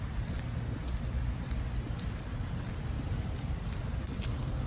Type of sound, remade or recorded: recorded